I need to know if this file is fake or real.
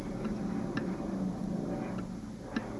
real